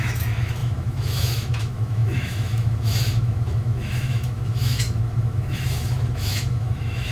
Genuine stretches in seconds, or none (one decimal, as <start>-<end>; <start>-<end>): none